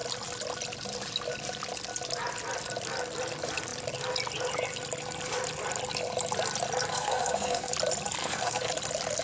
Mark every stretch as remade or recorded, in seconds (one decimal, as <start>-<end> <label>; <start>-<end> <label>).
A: 0.0-6.9 recorded; 6.9-7.7 remade; 7.7-8.2 recorded; 8.2-8.7 remade; 8.7-9.2 recorded